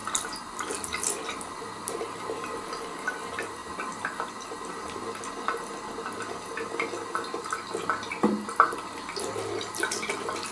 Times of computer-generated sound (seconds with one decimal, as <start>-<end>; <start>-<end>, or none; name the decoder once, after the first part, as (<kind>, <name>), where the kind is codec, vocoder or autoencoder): 0.0-5.0 (vocoder, BigVGAN v2); 9.8-10.5